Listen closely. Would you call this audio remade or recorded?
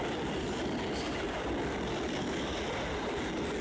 remade